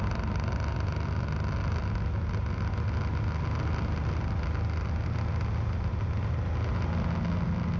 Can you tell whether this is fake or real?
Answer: real